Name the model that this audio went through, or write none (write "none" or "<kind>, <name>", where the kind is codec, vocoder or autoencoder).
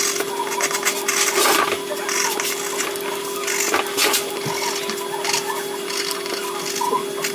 none